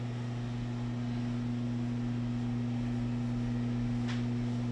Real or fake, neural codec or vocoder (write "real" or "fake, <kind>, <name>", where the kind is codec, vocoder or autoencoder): real